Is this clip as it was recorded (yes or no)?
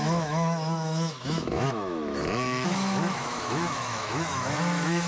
no